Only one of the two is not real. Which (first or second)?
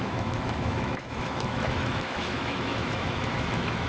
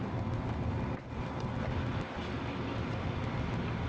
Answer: first